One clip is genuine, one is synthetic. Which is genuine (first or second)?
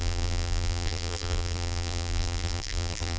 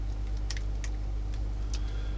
second